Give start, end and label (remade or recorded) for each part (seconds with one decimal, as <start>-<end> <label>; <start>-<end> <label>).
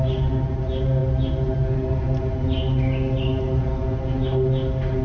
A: 0.0-5.0 recorded